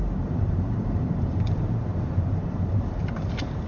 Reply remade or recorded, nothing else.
remade